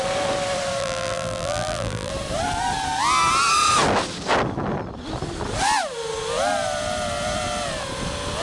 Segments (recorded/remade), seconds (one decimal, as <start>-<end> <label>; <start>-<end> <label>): 0.0-0.8 recorded; 0.8-2.1 remade; 2.1-8.4 recorded